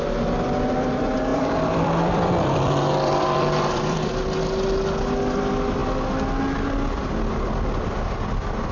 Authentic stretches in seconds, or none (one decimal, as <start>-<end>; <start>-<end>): 0.0-1.3; 4.1-8.7

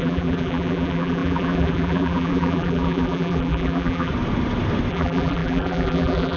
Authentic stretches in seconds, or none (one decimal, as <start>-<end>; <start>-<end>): 4.1-4.9

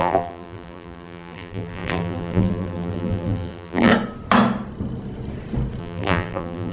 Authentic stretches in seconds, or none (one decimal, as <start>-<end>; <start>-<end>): 3.9-5.8

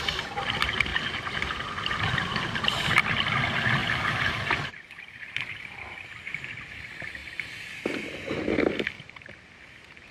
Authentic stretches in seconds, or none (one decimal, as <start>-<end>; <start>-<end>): 0.0-3.8; 6.7-10.1